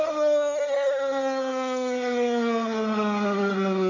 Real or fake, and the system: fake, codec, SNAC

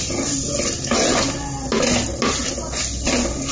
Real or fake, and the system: real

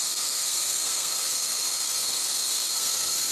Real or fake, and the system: fake, codec, SNAC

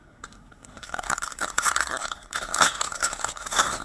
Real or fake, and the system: fake, codec, SNAC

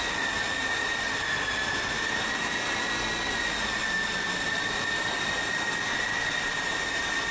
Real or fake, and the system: real